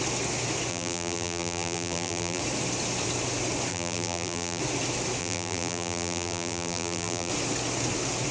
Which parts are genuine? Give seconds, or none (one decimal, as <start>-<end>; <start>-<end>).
0.0-0.7; 2.4-3.7; 4.6-5.2; 7.3-8.3